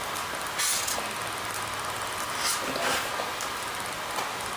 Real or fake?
real